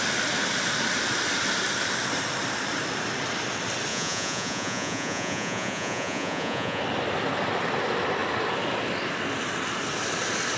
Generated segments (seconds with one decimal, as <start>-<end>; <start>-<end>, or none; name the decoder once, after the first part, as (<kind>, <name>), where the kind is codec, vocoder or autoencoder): 3.9-6.8 (vocoder, Vocos)